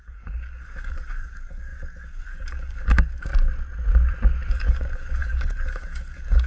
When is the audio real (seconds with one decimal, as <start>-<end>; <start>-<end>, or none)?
3.3-4.5